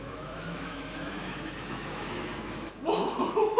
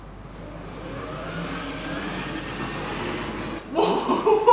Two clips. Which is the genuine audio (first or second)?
second